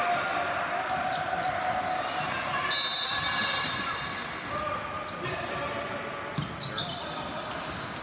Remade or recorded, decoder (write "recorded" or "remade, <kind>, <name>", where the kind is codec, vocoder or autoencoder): recorded